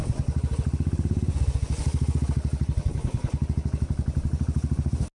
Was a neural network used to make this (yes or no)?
no